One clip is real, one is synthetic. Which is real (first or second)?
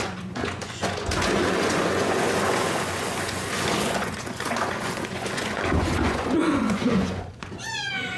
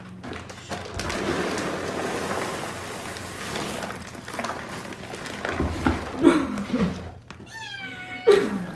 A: second